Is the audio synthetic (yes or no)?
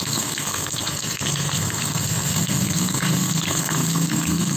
yes